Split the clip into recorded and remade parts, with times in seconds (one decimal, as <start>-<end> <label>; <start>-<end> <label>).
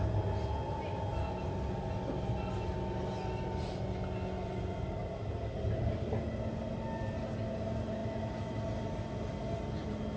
0.0-10.2 recorded